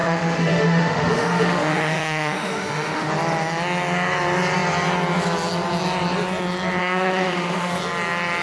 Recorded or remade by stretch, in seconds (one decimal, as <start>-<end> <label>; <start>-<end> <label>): 0.0-3.1 remade; 3.1-6.8 recorded; 6.8-7.7 remade; 7.7-8.4 recorded